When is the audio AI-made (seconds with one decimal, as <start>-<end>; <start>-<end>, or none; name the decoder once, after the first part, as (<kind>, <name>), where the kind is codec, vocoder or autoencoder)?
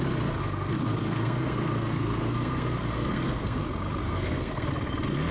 0.4-3.6 (codec, SNAC); 4.0-4.7